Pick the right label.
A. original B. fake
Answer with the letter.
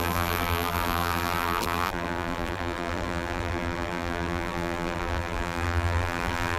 B